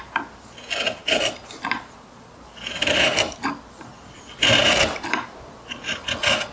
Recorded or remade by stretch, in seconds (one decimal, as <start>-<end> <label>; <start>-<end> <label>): 0.0-6.5 recorded